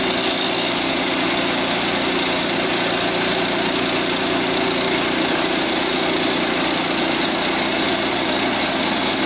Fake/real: real